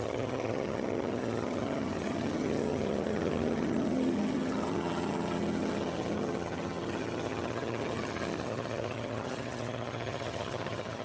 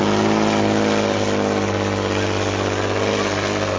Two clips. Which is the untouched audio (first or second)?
second